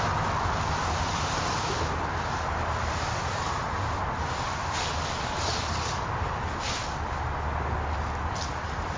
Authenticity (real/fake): real